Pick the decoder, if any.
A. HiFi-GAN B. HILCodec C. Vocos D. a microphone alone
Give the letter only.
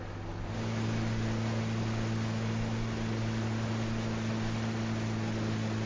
D